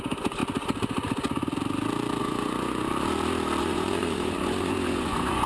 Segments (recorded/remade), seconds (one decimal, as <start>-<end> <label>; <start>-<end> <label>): 0.0-0.4 remade; 0.4-2.2 recorded; 2.2-2.9 remade; 2.9-3.6 recorded; 3.6-5.5 remade

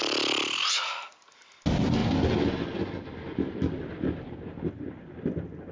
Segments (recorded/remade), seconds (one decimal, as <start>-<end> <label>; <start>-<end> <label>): 0.0-5.7 recorded

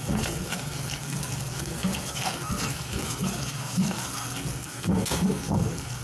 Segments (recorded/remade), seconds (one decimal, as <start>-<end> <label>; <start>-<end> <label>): 0.0-6.0 remade

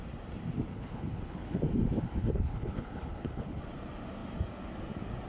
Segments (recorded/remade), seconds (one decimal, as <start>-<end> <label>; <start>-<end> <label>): 0.0-0.7 recorded; 0.7-1.6 remade; 1.6-2.2 recorded; 2.2-3.6 remade; 3.6-5.3 recorded

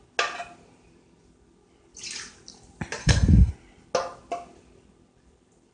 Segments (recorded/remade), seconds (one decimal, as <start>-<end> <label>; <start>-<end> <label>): 0.0-3.0 recorded; 3.0-3.5 remade; 3.5-5.7 recorded

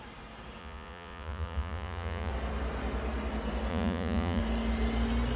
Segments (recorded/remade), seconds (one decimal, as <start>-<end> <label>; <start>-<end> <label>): 0.0-0.6 recorded; 0.6-2.3 remade; 2.3-3.7 recorded; 3.7-4.4 remade; 4.4-5.4 recorded